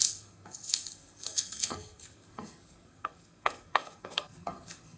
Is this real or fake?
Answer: fake